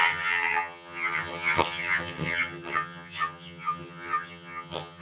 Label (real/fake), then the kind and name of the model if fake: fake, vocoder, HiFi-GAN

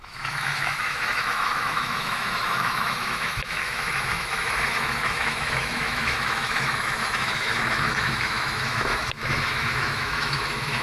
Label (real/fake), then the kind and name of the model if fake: fake, autoencoder, DAC-VAE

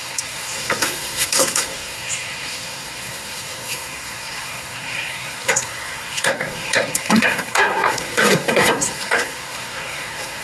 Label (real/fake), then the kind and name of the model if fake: fake, codec, SNAC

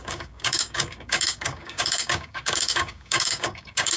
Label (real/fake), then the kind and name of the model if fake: fake, codec, DAC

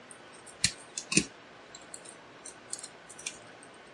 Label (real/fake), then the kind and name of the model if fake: real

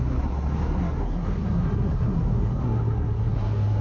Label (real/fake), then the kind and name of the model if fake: fake, codec, SNAC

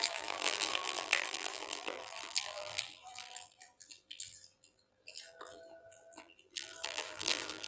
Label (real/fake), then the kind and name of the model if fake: fake, vocoder, BigVGAN v2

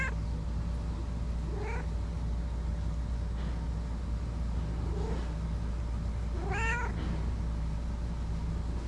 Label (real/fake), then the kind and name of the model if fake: real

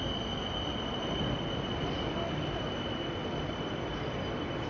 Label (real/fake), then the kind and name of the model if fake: real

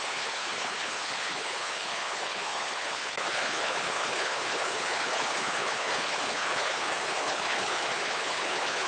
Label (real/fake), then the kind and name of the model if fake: fake, codec, HILCodec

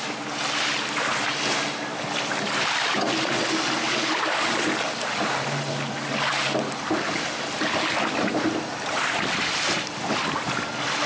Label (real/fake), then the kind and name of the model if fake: real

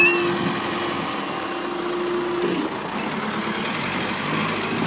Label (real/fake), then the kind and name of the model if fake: real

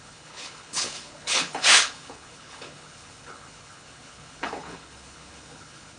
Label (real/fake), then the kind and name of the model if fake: fake, codec, HILCodec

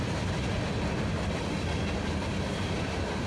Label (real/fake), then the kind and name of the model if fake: real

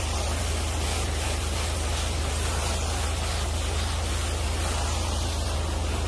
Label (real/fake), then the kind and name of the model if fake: real